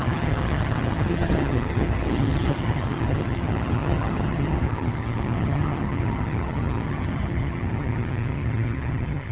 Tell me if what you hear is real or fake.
fake